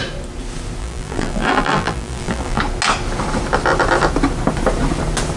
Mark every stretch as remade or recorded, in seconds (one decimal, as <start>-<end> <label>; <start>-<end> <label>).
0.0-0.8 recorded; 0.8-2.6 remade; 2.6-5.4 recorded